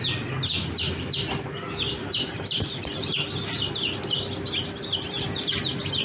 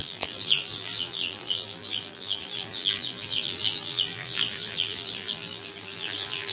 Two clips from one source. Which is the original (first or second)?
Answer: first